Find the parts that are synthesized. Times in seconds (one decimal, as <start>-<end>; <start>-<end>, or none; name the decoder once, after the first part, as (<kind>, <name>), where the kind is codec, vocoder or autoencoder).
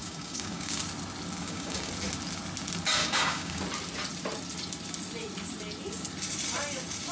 0.0-0.8 (codec, DAC); 1.4-1.9; 3.0-3.6